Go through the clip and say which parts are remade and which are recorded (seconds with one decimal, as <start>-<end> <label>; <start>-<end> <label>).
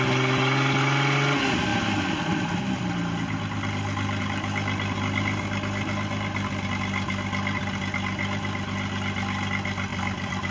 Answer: 0.0-9.9 recorded; 9.9-10.5 remade